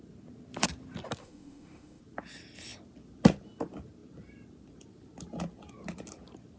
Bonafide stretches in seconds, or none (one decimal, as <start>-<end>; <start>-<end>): 0.0-1.2; 2.0-6.6